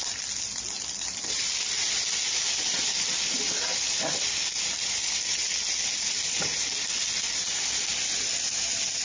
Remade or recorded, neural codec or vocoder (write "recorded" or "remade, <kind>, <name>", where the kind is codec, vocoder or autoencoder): recorded